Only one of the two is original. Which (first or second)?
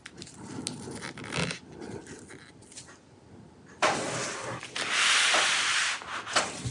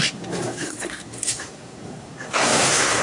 first